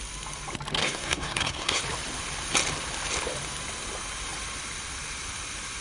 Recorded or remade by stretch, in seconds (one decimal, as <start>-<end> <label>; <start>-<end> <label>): 0.0-0.8 recorded; 0.8-1.8 remade; 1.8-5.8 recorded